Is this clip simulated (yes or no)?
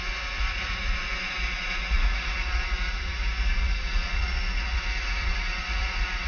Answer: yes